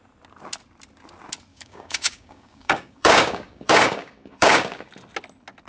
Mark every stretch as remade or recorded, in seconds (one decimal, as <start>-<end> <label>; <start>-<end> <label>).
0.0-1.5 recorded; 1.5-4.9 remade; 4.9-5.7 recorded